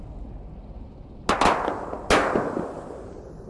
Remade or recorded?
recorded